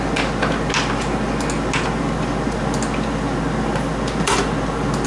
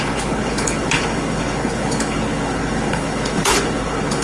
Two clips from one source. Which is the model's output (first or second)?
second